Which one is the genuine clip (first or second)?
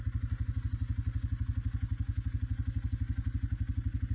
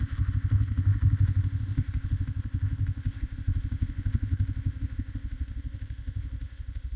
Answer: first